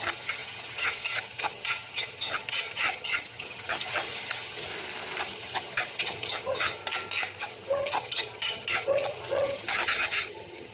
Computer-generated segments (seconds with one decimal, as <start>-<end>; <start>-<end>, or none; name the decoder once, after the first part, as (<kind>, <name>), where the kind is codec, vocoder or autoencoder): 0.0-4.7 (vocoder, HiFi-GAN); 5.2-6.8; 7.4-10.7